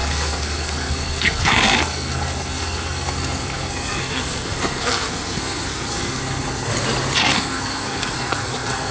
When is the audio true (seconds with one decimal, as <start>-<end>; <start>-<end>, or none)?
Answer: 6.7-7.2